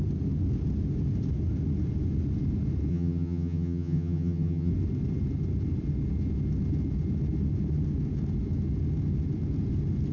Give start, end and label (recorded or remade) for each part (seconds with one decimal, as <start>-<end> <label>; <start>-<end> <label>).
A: 0.0-2.9 recorded; 2.9-4.7 remade; 4.7-10.1 recorded